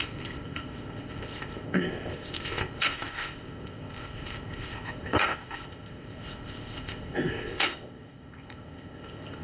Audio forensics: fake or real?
fake